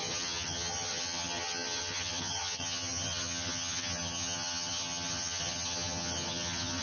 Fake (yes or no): yes